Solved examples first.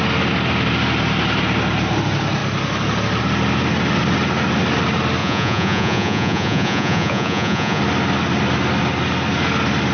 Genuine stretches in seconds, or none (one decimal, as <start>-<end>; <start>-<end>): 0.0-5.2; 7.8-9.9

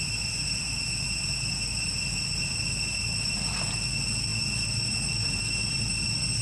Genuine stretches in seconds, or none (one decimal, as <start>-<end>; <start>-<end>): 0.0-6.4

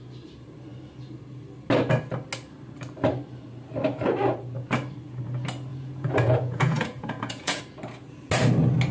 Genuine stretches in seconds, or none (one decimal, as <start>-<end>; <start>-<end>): 0.0-5.7; 7.6-8.9